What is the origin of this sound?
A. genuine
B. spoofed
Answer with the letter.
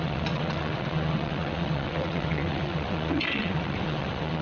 B